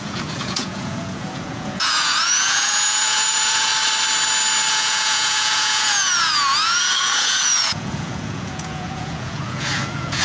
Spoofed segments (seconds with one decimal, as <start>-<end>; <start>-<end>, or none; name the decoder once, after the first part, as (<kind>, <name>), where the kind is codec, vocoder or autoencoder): 0.0-3.7 (vocoder, Vocos); 4.7-10.2